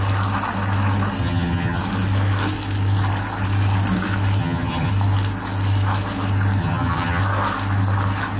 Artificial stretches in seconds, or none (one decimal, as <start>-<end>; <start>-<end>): 1.2-1.8; 4.4-4.9; 6.6-7.2